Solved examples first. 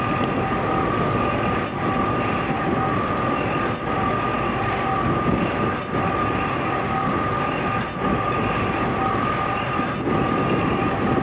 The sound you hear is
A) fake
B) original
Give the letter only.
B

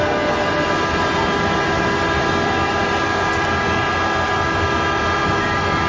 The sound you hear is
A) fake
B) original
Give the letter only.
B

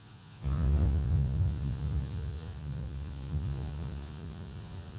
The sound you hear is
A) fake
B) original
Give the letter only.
A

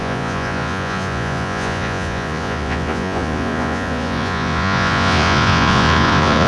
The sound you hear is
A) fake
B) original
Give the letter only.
A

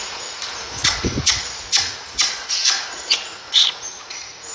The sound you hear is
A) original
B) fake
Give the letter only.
B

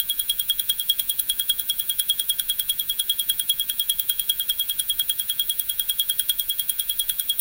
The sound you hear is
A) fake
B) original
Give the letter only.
A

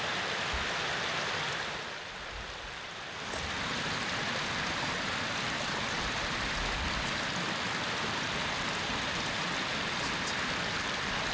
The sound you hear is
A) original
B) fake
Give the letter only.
A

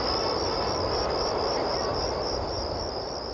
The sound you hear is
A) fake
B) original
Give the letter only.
B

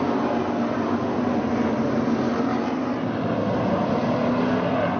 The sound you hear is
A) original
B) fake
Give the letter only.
A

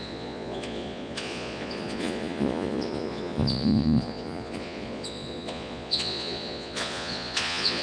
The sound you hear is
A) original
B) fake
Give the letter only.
B